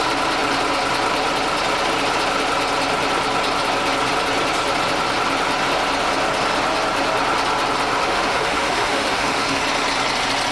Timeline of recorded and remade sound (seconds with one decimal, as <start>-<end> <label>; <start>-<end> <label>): 0.0-8.0 recorded; 8.0-9.6 remade; 9.6-10.5 recorded